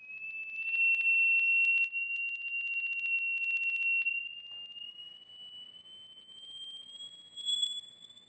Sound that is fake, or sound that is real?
real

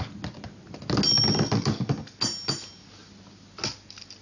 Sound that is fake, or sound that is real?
real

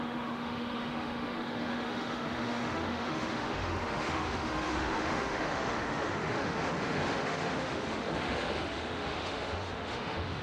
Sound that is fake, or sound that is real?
fake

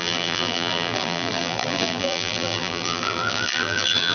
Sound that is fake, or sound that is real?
fake